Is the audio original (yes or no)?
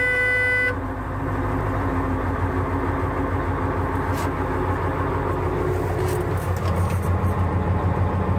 yes